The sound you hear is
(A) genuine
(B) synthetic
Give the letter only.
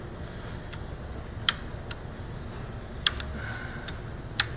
A